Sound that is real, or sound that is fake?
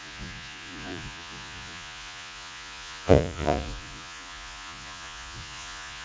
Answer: fake